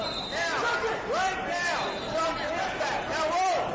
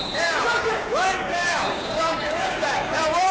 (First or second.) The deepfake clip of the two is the second